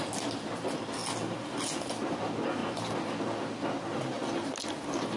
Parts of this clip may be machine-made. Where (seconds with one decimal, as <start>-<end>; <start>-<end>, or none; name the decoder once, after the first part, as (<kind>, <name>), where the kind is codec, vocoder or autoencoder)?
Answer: none